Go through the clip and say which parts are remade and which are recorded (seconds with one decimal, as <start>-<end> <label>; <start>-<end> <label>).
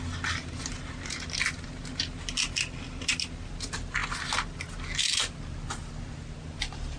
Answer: 0.0-7.0 recorded